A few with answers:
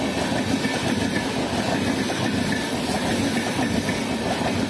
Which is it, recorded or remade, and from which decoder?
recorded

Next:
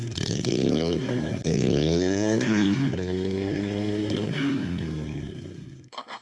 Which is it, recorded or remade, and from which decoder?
remade, codec, SNAC